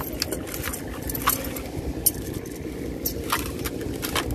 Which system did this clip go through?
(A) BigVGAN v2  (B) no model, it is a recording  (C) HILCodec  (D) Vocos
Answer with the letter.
B